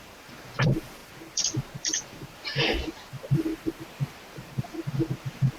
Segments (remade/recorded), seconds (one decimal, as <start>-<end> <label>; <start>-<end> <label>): 0.0-3.5 remade; 3.5-4.6 recorded; 4.6-5.6 remade